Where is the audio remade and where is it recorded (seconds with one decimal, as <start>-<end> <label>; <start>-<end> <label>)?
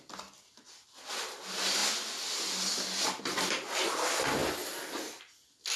0.0-5.8 recorded